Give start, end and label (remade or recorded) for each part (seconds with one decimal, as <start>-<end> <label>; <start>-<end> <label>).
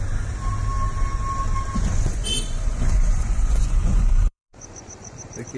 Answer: 0.0-1.9 recorded; 1.9-5.6 remade